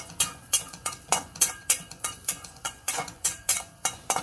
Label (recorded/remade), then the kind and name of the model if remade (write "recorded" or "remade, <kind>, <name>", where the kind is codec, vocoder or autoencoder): remade, vocoder, Vocos